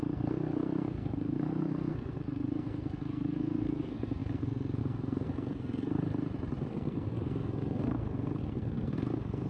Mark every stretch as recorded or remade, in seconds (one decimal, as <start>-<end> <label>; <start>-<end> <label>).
0.0-6.0 remade; 6.0-6.7 recorded; 6.7-9.5 remade